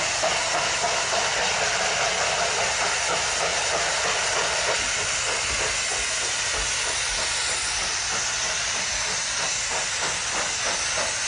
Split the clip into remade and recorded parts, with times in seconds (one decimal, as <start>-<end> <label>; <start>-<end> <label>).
0.0-1.3 recorded; 1.3-2.0 remade; 2.0-3.5 recorded; 3.5-5.2 remade; 5.2-11.3 recorded